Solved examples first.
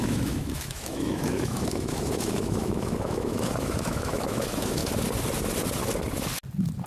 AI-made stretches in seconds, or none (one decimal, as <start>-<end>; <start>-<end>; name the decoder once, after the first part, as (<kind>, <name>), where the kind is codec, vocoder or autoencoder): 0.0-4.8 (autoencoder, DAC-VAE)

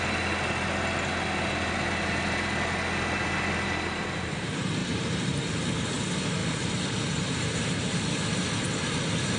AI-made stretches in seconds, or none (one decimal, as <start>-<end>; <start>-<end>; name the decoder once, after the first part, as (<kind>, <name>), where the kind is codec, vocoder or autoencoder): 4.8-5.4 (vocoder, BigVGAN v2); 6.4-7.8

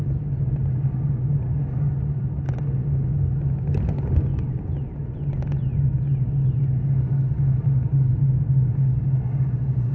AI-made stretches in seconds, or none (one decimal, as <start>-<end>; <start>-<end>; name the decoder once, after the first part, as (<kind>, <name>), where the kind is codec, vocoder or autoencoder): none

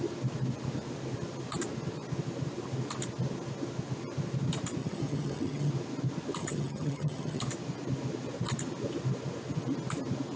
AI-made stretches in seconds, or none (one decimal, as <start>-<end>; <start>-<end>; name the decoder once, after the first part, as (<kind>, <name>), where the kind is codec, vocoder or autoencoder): 4.8-5.7 (vocoder, HiFi-GAN); 6.4-7.4